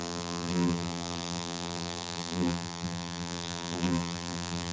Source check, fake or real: fake